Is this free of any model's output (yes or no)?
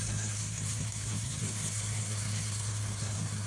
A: no